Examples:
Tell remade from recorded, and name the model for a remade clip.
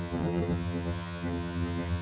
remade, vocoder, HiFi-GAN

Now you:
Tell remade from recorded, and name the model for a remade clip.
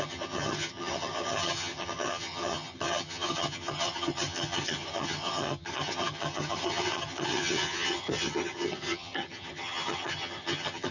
remade, vocoder, HiFi-GAN